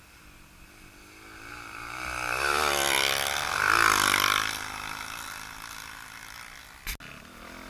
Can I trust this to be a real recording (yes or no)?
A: yes